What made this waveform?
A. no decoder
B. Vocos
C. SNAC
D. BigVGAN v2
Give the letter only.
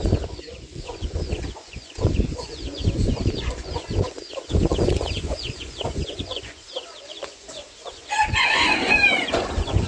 B